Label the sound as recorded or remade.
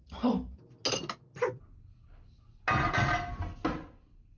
recorded